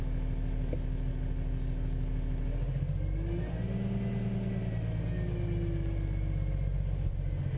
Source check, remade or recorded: recorded